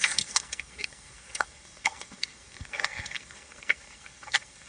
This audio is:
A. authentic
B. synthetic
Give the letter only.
B